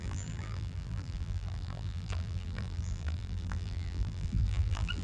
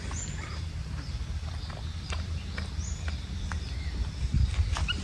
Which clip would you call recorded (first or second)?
second